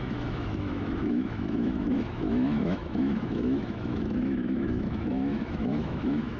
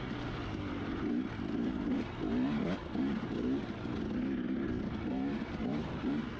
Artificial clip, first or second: first